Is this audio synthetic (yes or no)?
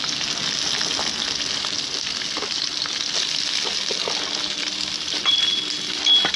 no